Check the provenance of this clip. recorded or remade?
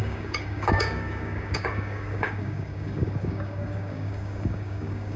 remade